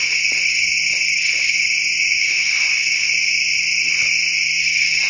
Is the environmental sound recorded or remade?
recorded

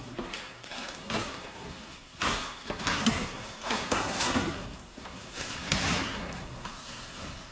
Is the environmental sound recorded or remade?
remade